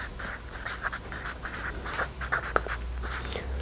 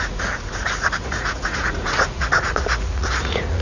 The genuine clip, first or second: first